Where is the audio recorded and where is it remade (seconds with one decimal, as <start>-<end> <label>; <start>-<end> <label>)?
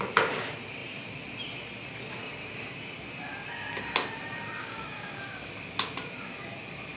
0.0-4.6 recorded; 4.6-5.5 remade; 5.5-7.0 recorded